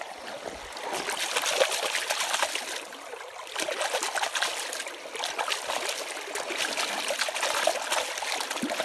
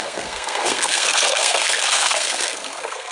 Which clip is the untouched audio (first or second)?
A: first